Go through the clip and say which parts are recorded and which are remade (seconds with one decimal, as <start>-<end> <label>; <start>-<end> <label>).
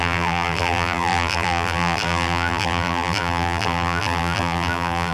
0.0-5.1 remade